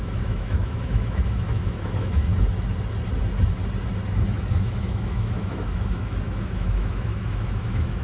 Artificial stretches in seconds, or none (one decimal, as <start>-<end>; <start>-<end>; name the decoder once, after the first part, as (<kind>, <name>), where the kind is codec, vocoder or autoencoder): 0.0-2.3 (autoencoder, DAC-VAE); 4.5-8.0